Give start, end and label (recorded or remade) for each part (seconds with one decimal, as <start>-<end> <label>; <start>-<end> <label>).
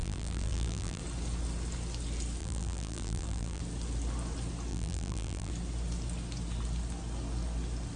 0.0-1.0 remade; 1.0-2.4 recorded; 2.4-3.6 remade; 3.6-4.7 recorded; 4.7-5.5 remade; 5.5-8.0 recorded